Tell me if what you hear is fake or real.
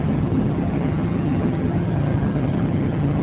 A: fake